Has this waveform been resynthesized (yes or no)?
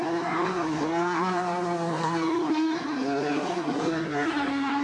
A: yes